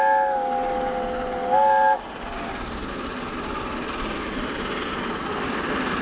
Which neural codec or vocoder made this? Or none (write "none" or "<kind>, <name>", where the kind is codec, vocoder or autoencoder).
none